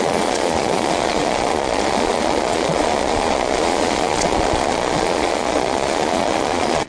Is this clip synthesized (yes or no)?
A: yes